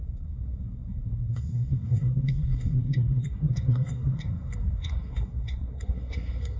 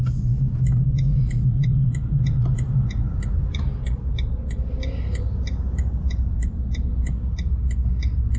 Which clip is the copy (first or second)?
first